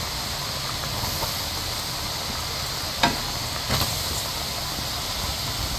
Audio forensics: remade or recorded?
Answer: recorded